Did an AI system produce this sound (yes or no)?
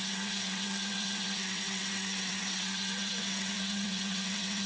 yes